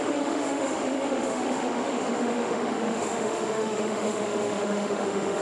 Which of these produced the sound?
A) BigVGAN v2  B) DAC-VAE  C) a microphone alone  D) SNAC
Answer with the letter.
B